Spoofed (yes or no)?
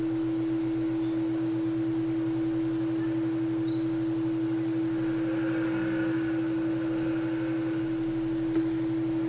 no